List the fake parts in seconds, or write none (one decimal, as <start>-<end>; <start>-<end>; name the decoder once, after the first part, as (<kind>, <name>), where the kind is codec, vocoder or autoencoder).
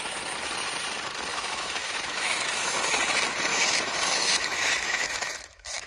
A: 1.3-2.8 (autoencoder, DAC-VAE); 3.5-5.9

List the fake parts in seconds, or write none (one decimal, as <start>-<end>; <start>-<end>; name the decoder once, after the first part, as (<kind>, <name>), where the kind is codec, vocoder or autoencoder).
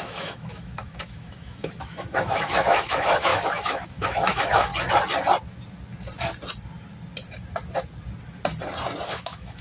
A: 0.0-4.7 (autoencoder, DAC-VAE); 9.1-9.6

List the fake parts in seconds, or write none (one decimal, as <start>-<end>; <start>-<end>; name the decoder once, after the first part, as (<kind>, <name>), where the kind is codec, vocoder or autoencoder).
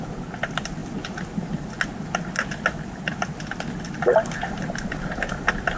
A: none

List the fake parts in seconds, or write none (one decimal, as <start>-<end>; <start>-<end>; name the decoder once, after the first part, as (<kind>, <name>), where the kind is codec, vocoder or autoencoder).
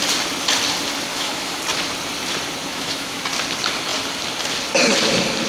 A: 1.1-1.6 (autoencoder, DAC-VAE); 2.7-3.2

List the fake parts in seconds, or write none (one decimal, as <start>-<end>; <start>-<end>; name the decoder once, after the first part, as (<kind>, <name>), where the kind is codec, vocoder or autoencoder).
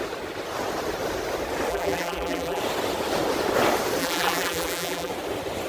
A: 1.7-2.6 (vocoder, BigVGAN v2); 4.0-5.1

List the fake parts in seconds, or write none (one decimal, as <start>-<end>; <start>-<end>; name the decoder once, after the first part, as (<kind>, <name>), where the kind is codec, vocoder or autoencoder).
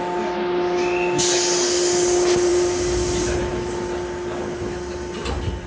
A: none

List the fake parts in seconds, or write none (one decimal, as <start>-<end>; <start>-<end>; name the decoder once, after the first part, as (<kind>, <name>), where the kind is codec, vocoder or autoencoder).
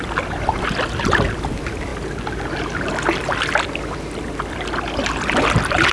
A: none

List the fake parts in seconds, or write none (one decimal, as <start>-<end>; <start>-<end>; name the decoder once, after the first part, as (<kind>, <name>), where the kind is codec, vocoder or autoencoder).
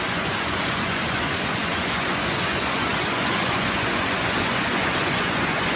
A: 0.0-5.8 (vocoder, Vocos)